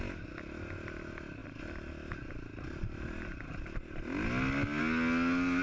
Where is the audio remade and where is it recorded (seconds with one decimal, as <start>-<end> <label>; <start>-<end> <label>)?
0.0-5.6 recorded